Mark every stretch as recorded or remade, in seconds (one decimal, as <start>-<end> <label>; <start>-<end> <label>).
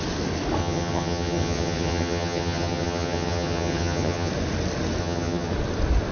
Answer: 0.0-0.6 recorded; 0.6-4.3 remade; 4.3-5.0 recorded; 5.0-5.5 remade; 5.5-6.1 recorded